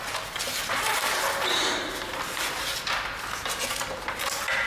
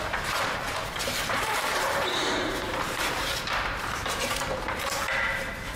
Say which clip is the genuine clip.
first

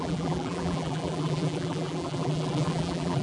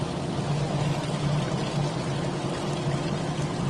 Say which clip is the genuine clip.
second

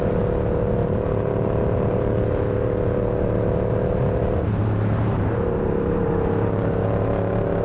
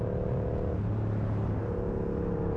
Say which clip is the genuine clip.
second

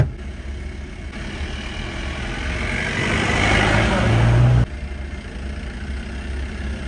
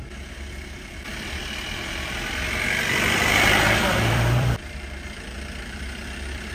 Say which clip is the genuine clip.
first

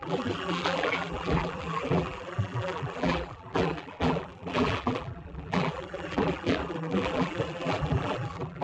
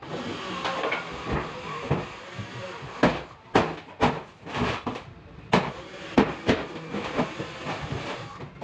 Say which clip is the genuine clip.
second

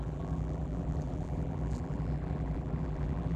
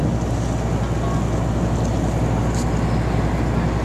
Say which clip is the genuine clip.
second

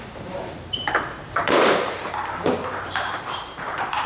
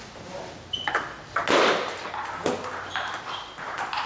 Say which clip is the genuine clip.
second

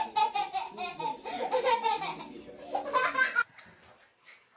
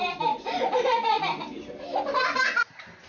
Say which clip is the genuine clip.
first